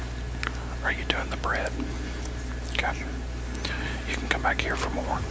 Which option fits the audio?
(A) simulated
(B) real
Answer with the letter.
B